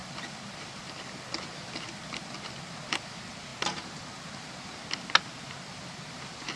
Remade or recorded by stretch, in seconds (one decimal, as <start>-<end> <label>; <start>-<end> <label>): 0.0-6.6 recorded